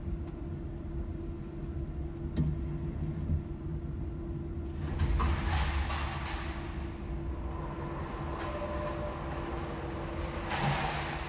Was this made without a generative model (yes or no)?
yes